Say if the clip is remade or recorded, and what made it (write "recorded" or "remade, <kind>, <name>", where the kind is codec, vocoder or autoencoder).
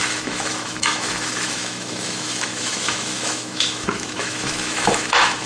remade, autoencoder, DAC-VAE